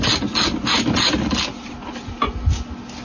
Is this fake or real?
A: real